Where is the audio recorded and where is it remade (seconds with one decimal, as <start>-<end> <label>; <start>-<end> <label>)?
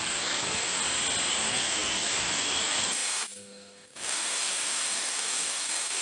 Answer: 0.0-0.8 remade; 0.8-1.3 recorded; 1.3-6.0 remade